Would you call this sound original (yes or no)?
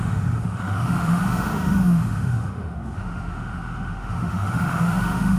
no